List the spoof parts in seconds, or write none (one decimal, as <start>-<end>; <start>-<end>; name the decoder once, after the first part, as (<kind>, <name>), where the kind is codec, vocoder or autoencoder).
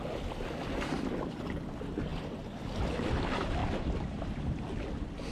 2.1-2.8 (vocoder, BigVGAN v2); 3.6-5.3